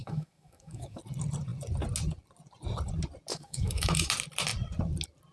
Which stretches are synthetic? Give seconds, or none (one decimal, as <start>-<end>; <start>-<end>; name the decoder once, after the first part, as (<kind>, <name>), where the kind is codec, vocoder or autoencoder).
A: 0.0-1.0 (autoencoder, DAC-VAE); 3.3-4.1